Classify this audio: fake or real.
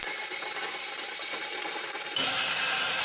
fake